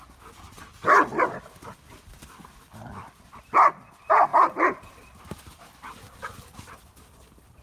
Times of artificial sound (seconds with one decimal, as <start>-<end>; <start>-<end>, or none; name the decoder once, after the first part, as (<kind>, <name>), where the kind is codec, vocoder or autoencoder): 4.3-4.8 (vocoder, BigVGAN v2)